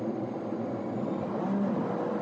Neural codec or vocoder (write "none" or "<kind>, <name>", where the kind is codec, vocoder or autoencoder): none